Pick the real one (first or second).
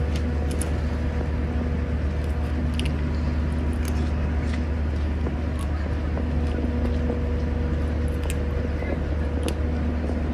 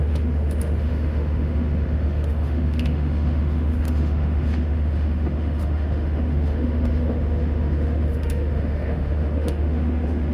first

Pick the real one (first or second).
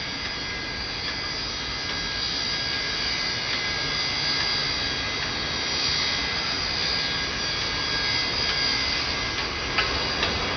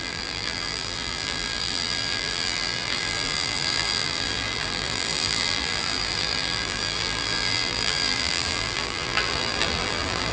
first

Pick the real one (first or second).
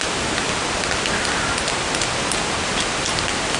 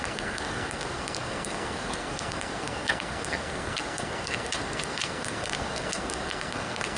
first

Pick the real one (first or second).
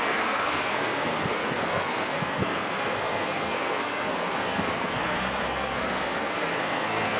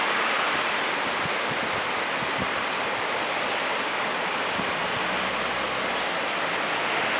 second